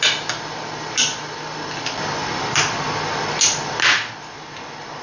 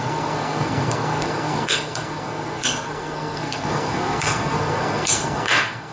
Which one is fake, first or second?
second